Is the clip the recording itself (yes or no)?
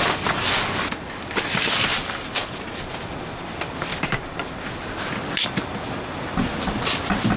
yes